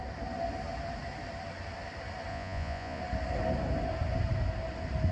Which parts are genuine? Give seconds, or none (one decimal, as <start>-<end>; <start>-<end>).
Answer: 0.0-2.3; 3.0-5.1